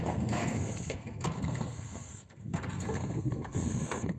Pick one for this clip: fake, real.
fake